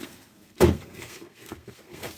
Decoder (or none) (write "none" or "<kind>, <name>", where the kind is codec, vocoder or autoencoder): codec, SNAC